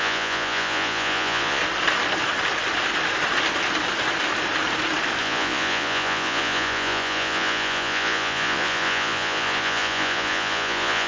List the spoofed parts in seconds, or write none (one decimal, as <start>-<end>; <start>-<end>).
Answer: 0.0-1.6; 5.2-11.1